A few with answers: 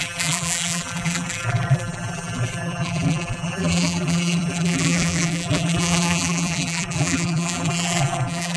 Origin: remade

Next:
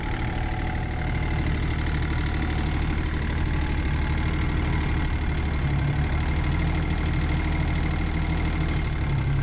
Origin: recorded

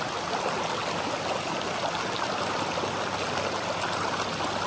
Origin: recorded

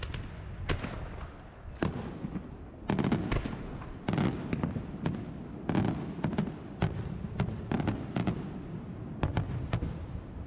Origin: recorded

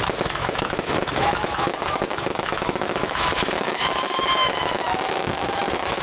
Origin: remade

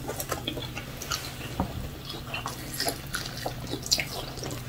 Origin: recorded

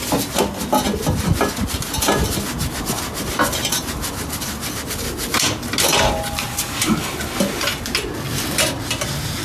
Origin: recorded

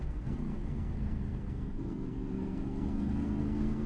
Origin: remade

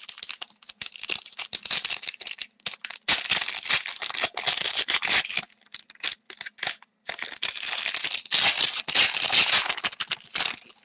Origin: recorded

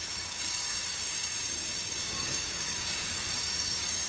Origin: remade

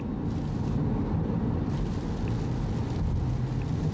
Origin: recorded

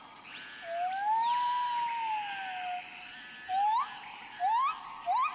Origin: recorded